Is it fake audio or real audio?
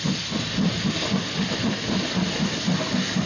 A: real